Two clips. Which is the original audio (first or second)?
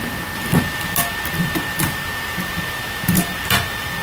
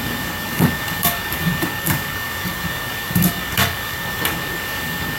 first